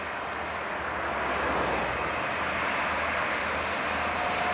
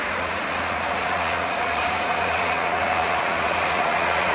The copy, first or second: second